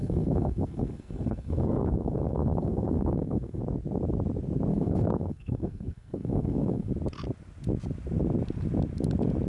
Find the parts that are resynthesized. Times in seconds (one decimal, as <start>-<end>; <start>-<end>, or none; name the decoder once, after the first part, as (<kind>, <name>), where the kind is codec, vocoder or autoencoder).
0.0-3.6 (codec, SNAC); 4.7-6.9